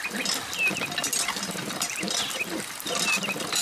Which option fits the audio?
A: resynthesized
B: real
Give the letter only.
B